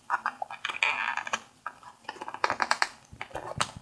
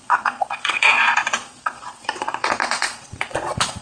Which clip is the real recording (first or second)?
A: first